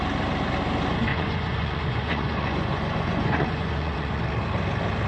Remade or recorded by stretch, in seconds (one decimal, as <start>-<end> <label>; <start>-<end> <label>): 0.0-1.1 recorded; 1.1-4.2 remade; 4.2-5.1 recorded